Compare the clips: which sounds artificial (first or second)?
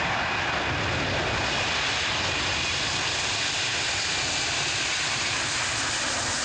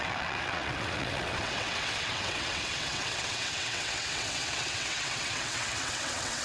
second